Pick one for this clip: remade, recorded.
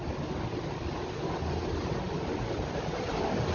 recorded